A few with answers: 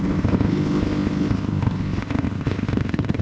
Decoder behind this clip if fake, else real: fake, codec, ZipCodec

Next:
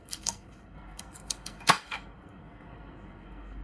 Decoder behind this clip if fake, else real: fake, codec, SNAC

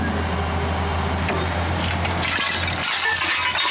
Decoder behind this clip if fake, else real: real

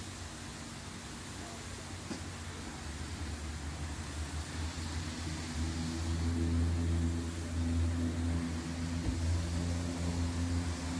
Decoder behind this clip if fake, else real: real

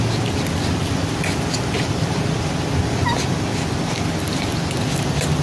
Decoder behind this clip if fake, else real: real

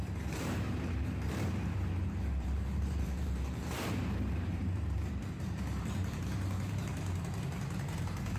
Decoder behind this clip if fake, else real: fake, vocoder, BigVGAN v2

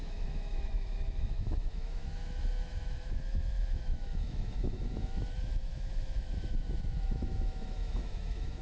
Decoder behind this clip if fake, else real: fake, autoencoder, DAC-VAE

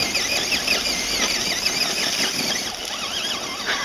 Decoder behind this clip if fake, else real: real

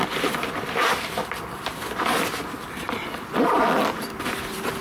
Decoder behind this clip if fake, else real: fake, vocoder, BigVGAN v2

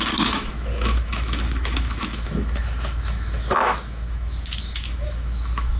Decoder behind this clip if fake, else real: fake, autoencoder, DAC-VAE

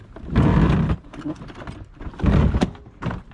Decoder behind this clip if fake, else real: fake, vocoder, BigVGAN v2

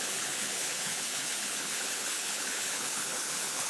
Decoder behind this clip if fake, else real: fake, codec, HILCodec